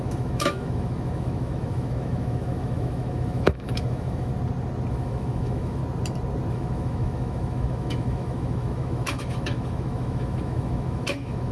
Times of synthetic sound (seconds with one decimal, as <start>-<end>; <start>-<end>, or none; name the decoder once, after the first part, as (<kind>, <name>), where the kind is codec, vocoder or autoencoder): 0.0-4.3 (autoencoder, DAC-VAE); 4.9-5.8; 6.5-11.5